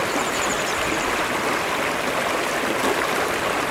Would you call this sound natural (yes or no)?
no